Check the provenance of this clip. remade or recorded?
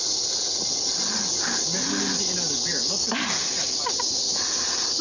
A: recorded